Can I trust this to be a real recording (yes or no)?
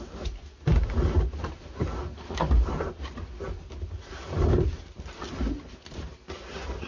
yes